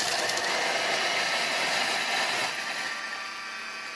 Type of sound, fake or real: real